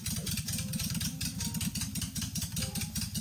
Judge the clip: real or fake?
real